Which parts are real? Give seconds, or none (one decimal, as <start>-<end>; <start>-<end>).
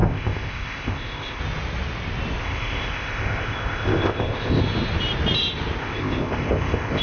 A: 1.4-2.4; 4.6-5.8